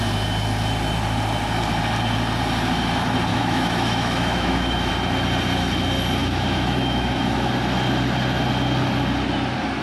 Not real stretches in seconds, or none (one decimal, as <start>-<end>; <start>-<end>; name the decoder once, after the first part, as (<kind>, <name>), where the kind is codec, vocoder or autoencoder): 3.3-4.9 (autoencoder, DAC-VAE); 6.2-7.5